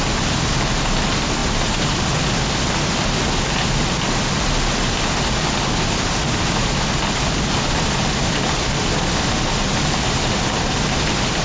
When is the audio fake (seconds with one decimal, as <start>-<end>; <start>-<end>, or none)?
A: none